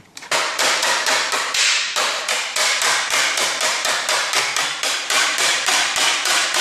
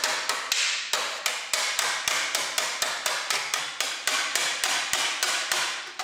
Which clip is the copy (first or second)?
first